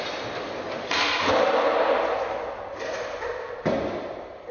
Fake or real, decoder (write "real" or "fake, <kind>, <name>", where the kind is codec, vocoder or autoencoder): real